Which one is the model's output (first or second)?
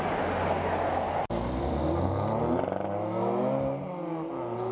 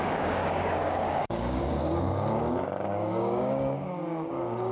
second